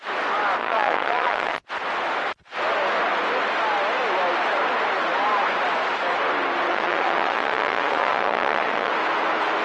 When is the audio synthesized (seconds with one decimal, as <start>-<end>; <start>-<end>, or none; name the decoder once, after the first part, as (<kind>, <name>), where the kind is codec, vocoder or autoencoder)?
0.6-1.7 (vocoder, Vocos); 6.7-8.9